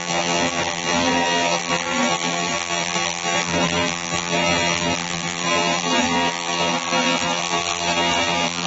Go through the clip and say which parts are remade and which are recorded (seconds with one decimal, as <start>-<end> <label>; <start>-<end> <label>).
0.0-8.7 remade